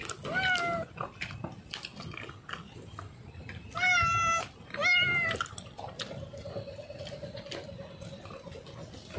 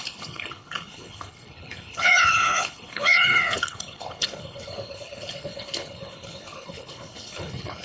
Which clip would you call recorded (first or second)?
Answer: first